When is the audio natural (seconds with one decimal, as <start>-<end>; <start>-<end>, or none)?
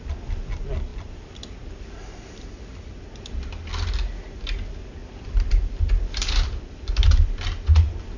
0.0-0.9; 2.9-5.0; 6.9-8.2